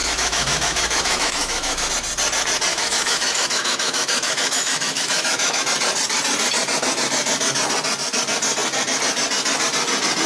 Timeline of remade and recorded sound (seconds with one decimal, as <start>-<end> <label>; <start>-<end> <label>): 0.0-1.9 remade; 1.9-2.7 recorded; 2.7-5.6 remade; 5.6-10.3 recorded